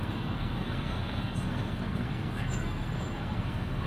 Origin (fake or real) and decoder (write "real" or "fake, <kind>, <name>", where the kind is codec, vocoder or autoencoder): fake, codec, SNAC